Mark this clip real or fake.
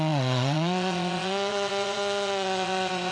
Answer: fake